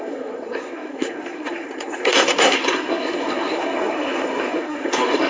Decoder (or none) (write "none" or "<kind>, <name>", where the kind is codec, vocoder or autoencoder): codec, SNAC